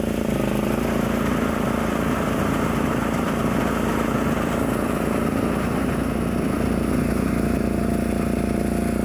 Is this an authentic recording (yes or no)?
no